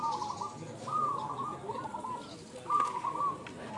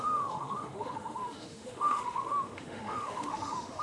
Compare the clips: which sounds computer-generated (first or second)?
second